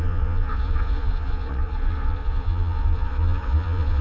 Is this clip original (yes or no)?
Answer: no